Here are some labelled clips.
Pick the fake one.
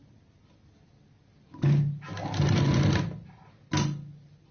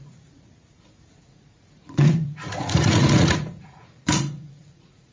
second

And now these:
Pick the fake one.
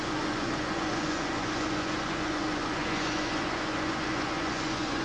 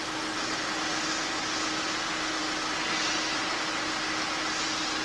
first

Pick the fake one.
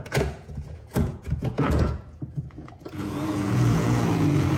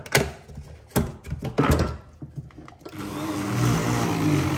first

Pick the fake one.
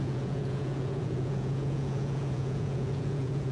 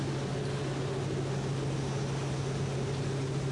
first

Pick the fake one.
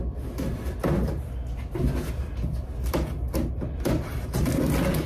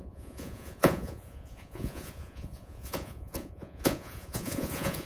second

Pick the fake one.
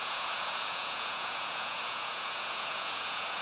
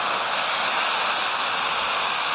first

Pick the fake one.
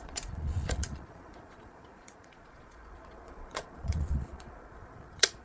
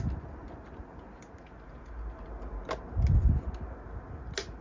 first